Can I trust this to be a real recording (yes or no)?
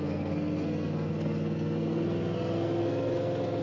no